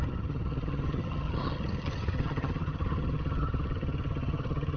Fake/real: fake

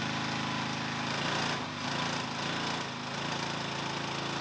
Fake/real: real